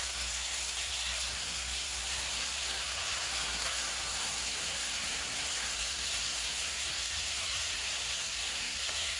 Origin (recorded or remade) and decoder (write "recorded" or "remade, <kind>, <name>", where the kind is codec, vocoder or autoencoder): remade, codec, SNAC